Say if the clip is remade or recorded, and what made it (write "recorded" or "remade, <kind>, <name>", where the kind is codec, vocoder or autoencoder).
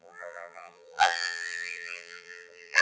remade, vocoder, BigVGAN v2